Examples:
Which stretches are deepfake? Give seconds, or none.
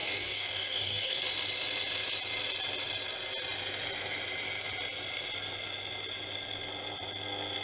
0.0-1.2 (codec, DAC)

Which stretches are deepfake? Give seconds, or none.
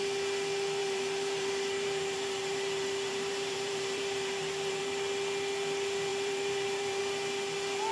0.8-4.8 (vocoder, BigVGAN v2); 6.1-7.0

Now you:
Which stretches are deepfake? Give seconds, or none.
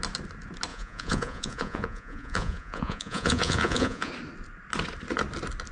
0.7-4.1 (vocoder, Vocos)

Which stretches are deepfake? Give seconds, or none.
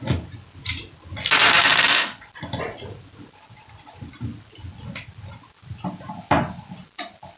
none